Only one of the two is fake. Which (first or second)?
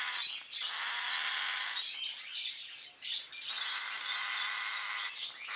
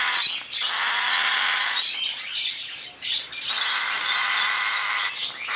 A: second